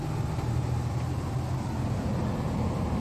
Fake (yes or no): no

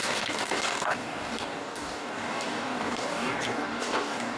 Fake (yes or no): yes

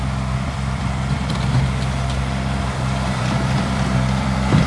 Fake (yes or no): yes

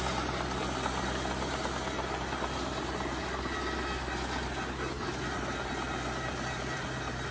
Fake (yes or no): no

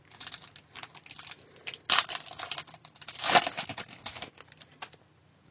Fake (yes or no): no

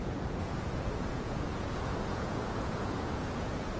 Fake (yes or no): yes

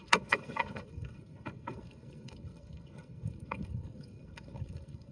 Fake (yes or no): yes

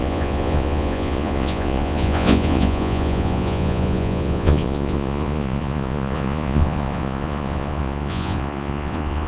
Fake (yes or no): yes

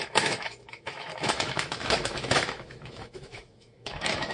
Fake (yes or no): yes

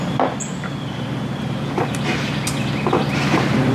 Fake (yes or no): no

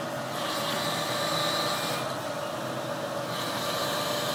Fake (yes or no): no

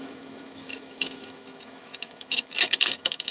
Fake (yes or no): yes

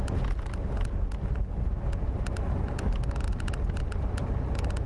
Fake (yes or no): no